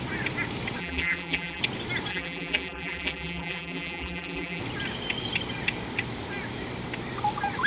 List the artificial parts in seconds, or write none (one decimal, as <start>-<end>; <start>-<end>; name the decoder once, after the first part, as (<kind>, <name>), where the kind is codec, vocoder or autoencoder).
0.8-1.6 (vocoder, BigVGAN v2); 2.1-4.6